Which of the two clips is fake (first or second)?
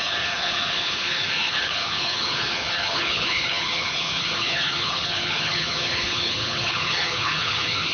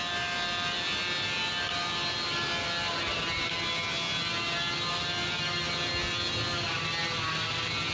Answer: first